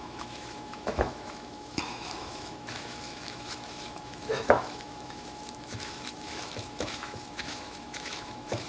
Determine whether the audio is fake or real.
fake